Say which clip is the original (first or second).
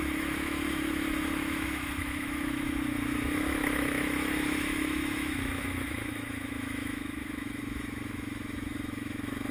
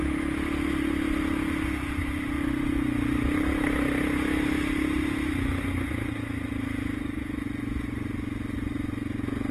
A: second